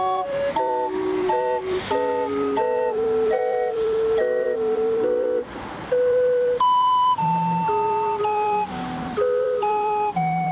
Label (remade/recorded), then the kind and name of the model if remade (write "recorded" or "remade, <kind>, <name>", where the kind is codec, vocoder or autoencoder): remade, vocoder, BigVGAN v2